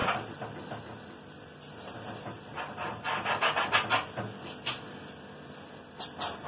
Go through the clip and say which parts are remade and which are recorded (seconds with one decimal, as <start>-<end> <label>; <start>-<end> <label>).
0.0-6.5 recorded